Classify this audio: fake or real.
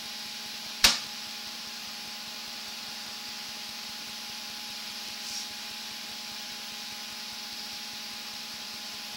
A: fake